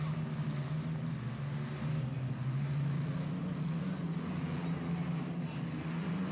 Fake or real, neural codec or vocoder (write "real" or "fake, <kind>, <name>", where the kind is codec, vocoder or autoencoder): real